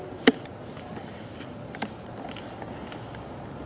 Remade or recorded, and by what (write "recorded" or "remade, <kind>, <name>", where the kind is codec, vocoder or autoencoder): recorded